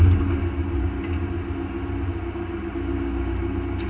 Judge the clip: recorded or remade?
recorded